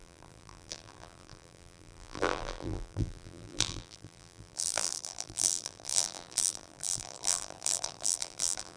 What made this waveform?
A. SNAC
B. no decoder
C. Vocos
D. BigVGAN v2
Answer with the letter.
D